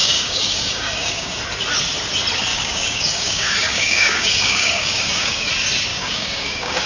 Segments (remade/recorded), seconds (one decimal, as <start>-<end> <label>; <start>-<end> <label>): 0.0-1.4 remade; 1.4-2.5 recorded; 2.5-5.5 remade; 5.5-5.9 recorded; 5.9-6.9 remade